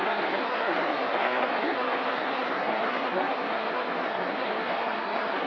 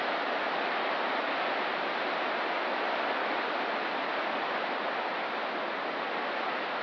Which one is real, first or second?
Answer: second